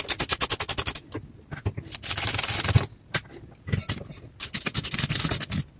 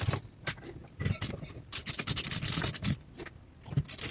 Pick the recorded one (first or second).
first